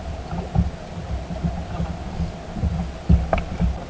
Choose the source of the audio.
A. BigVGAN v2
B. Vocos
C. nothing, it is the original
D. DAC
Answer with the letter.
C